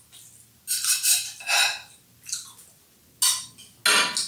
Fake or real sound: real